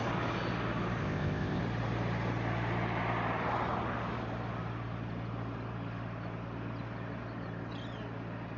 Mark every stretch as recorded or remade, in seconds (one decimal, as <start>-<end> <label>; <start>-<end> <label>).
0.0-1.0 recorded; 1.0-1.6 remade; 1.6-8.6 recorded